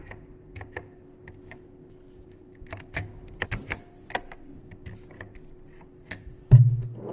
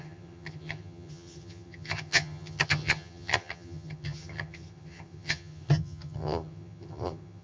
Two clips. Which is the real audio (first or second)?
first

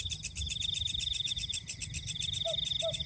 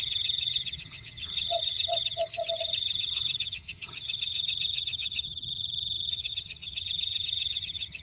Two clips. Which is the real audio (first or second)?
first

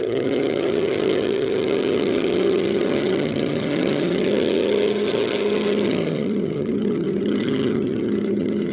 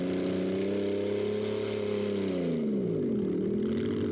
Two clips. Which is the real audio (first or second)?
second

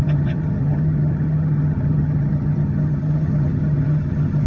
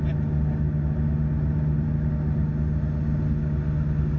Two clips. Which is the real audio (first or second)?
second